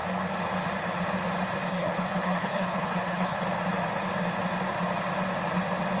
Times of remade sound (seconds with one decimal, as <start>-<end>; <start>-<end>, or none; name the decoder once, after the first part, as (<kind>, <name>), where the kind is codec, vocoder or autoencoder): 1.7-3.4 (codec, HILCodec)